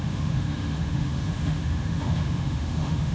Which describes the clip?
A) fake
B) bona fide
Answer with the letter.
A